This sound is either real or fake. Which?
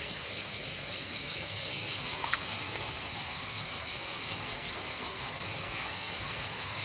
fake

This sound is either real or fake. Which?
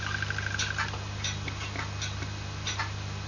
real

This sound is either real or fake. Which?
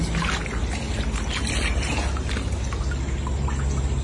real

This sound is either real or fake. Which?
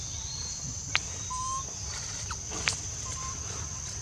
fake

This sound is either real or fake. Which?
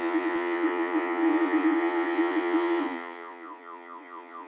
fake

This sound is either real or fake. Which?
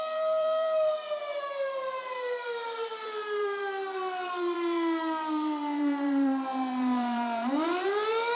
fake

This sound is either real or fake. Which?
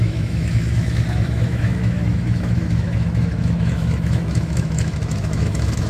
fake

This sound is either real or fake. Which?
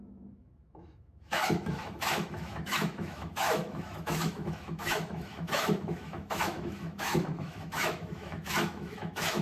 fake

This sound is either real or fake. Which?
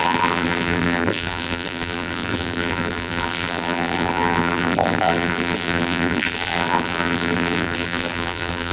fake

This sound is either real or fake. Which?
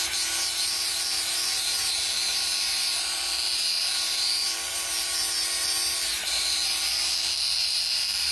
fake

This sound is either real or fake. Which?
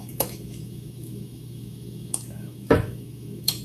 fake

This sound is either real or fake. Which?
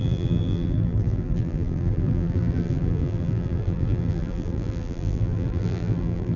fake